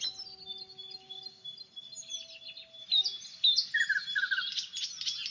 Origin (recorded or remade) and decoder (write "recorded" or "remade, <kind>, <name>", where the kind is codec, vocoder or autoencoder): recorded